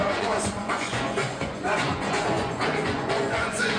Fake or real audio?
fake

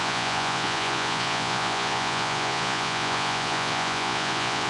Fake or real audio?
fake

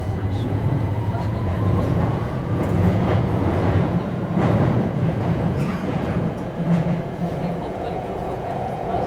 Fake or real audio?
fake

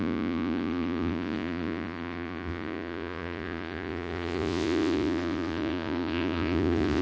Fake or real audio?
fake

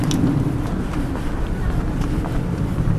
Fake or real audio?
real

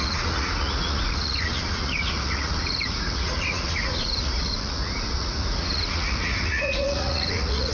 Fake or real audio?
fake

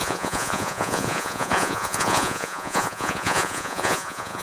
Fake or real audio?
fake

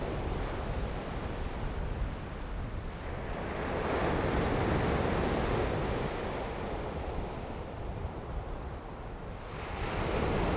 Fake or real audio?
real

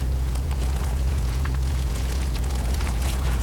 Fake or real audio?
fake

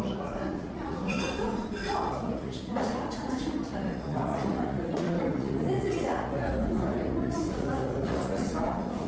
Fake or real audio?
fake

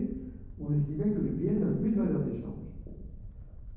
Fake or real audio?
fake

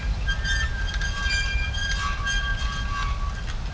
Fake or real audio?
real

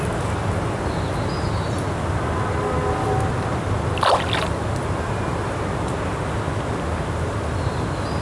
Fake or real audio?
real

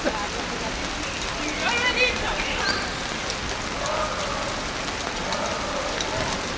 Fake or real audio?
real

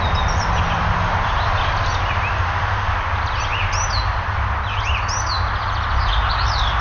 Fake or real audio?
real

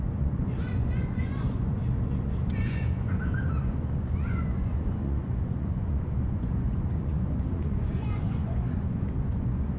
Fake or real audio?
fake